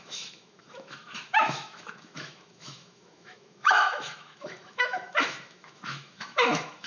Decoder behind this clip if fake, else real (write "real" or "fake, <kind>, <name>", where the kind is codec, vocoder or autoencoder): fake, autoencoder, DAC-VAE